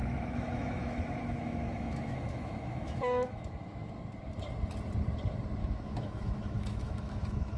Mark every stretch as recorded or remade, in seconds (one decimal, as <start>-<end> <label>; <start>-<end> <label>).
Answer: 0.0-3.9 remade; 3.9-5.6 recorded; 5.6-7.6 remade